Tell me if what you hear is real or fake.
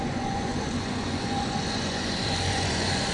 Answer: fake